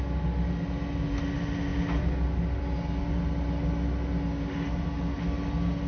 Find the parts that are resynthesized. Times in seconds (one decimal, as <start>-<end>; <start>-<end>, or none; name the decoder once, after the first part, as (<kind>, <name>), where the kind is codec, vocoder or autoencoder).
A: none